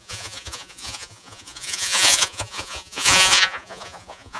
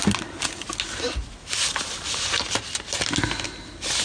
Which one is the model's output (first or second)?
first